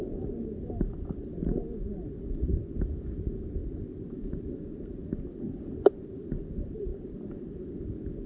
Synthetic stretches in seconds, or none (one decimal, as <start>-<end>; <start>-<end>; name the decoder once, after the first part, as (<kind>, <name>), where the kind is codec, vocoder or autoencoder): none